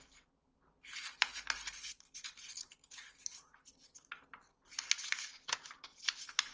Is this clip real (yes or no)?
yes